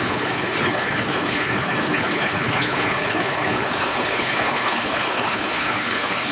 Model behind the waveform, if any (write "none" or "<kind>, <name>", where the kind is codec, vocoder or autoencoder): codec, HILCodec